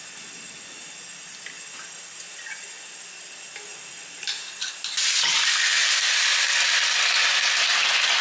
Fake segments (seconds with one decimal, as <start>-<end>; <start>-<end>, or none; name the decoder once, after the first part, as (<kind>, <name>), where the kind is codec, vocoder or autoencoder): none